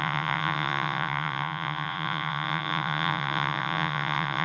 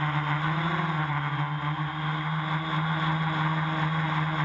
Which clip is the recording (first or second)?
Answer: second